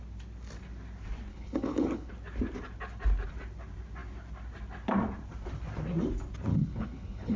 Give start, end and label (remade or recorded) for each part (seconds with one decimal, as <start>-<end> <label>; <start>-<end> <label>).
0.0-1.3 recorded; 1.3-2.1 remade; 2.1-6.5 recorded; 6.5-7.4 remade